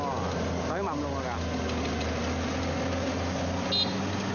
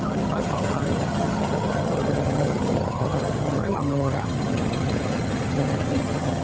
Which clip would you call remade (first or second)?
second